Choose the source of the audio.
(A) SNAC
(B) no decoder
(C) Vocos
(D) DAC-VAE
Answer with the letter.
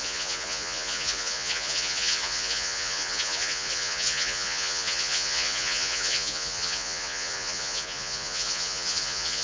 C